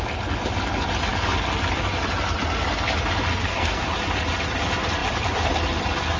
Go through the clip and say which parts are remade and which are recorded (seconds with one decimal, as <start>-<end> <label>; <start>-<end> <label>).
0.0-3.3 recorded; 3.3-3.8 remade; 3.8-6.2 recorded